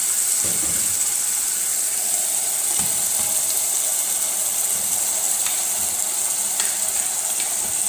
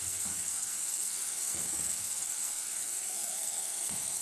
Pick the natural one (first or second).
first